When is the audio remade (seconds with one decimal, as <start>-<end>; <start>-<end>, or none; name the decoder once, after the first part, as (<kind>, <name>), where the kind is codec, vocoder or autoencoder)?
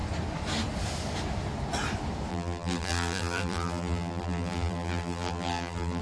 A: 2.3-6.0 (vocoder, BigVGAN v2)